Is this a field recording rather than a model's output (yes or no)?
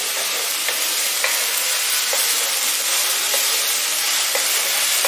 yes